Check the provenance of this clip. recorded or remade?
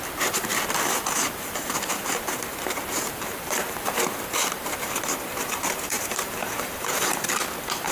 remade